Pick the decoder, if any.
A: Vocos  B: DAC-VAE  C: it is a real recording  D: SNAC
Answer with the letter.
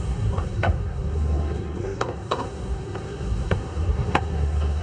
D